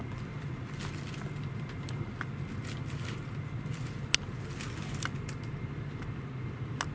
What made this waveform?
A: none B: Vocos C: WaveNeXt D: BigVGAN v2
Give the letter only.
A